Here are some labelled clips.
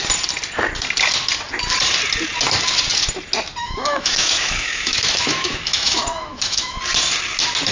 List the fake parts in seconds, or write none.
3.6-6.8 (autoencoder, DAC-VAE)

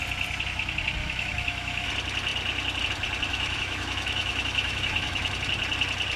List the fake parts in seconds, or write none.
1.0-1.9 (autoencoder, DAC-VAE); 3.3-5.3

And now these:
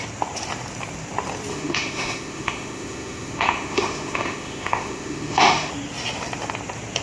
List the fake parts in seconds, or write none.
1.5-5.7 (autoencoder, DAC-VAE)

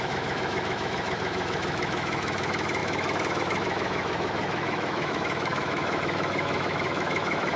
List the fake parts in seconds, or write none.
0.0-7.6 (autoencoder, DAC-VAE)

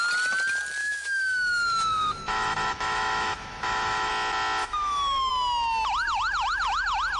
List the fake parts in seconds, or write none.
0.8-4.1 (autoencoder, DAC-VAE); 4.6-5.3

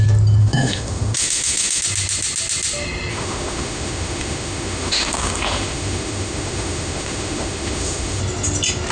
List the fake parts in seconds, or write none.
0.4-1.8 (autoencoder, DAC-VAE); 3.1-8.2